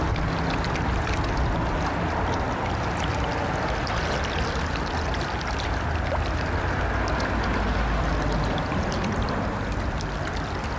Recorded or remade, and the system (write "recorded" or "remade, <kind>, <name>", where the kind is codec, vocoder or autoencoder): recorded